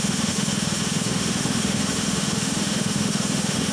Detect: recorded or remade remade